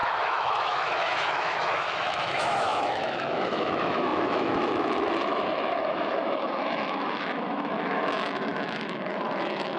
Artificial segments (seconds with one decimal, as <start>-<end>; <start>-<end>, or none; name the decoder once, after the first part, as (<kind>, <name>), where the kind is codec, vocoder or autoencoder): 0.0-9.8 (autoencoder, DAC-VAE)